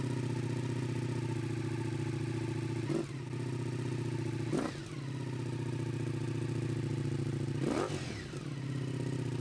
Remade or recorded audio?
recorded